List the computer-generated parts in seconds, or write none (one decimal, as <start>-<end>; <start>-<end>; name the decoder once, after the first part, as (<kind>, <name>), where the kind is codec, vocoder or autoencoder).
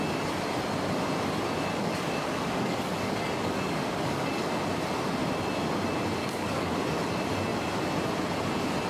1.7-4.5 (codec, DAC); 6.2-7.1